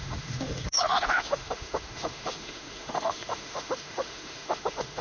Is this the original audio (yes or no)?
no